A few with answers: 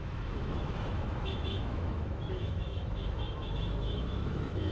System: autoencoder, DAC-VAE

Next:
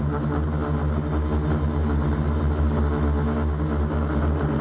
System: none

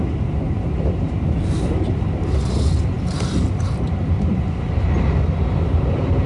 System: none